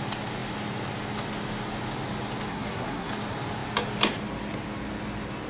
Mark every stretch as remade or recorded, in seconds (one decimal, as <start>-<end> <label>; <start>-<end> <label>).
0.0-2.5 recorded; 2.5-3.1 remade; 3.1-5.5 recorded